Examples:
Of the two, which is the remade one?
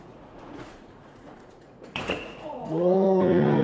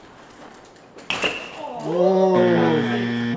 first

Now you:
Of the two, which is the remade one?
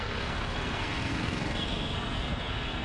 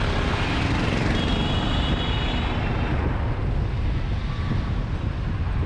first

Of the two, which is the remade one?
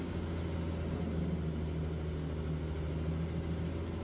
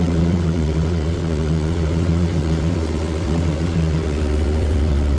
second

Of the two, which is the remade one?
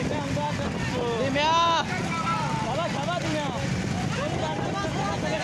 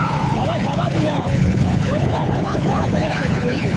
second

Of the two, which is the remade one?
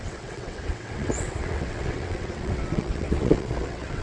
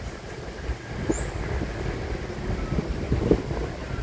first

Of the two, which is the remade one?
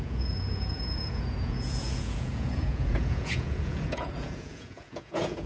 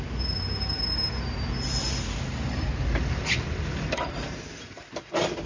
first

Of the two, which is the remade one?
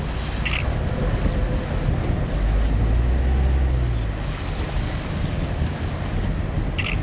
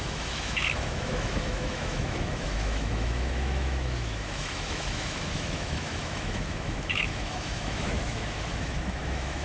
second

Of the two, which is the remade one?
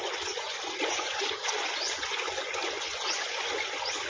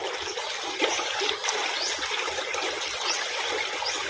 first